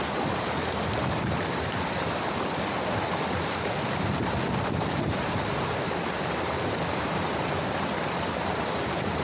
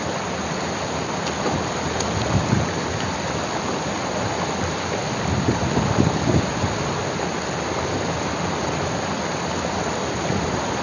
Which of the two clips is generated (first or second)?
first